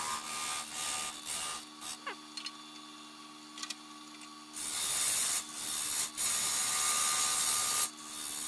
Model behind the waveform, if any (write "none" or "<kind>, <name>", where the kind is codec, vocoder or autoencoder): none